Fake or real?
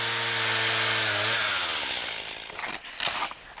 real